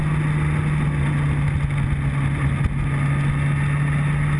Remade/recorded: recorded